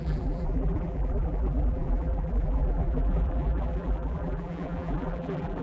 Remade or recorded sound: remade